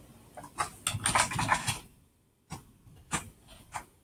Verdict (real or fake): real